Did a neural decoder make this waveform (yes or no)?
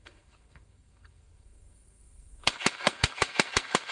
yes